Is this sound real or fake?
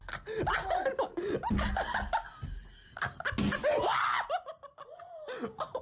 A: real